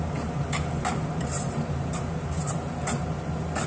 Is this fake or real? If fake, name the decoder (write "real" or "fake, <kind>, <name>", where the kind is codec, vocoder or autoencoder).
real